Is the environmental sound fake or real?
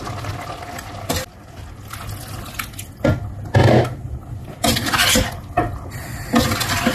real